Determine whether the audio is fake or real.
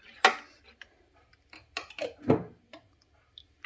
real